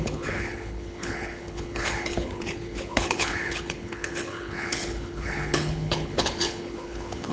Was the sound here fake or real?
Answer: fake